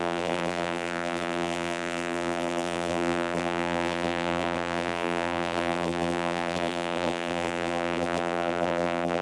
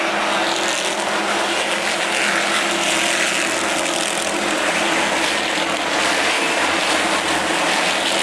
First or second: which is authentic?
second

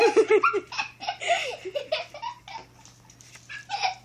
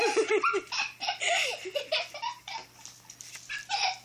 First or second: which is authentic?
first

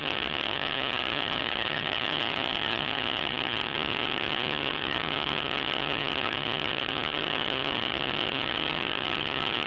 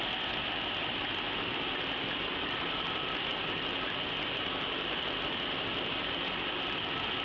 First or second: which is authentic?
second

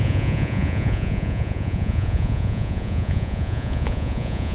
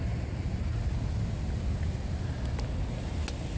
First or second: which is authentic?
second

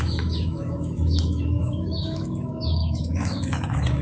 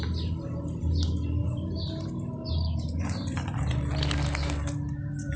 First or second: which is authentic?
second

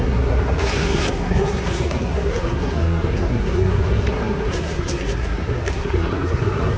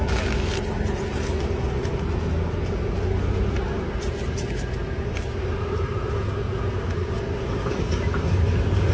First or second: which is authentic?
second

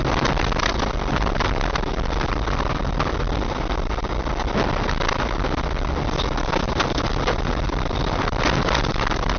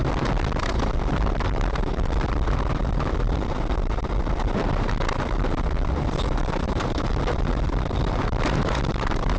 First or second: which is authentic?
first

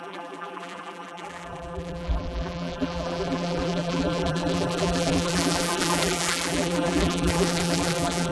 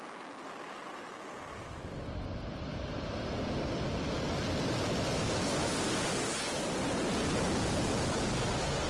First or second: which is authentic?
second